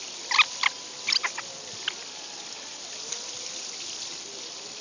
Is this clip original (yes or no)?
yes